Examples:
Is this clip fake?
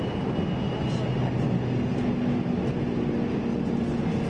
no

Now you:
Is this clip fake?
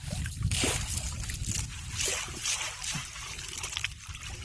no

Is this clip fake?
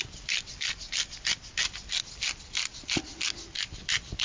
no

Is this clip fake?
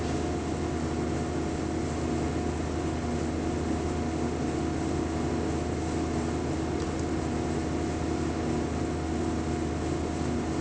no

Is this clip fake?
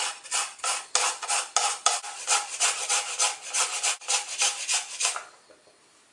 no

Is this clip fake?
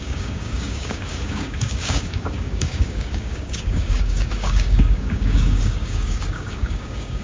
yes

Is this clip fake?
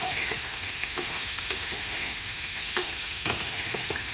yes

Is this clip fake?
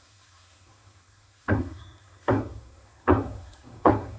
yes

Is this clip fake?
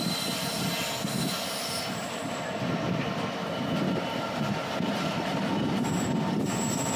no